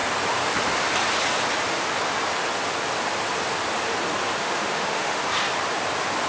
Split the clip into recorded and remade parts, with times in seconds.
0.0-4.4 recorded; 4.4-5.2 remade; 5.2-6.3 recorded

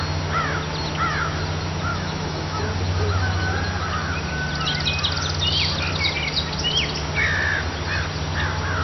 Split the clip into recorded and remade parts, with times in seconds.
0.0-1.9 recorded; 1.9-2.6 remade; 2.6-8.8 recorded

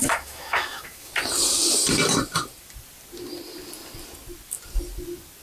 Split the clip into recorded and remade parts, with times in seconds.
0.0-1.1 remade; 1.1-5.4 recorded

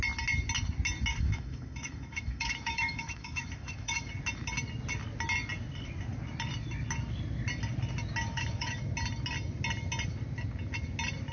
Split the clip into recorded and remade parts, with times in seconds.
0.0-1.1 recorded; 1.1-4.1 remade; 4.1-8.3 recorded; 8.3-8.8 remade; 8.8-11.3 recorded

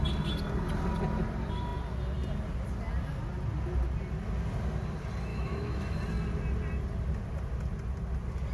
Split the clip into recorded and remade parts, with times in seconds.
0.0-5.3 recorded; 5.3-6.0 remade; 6.0-8.5 recorded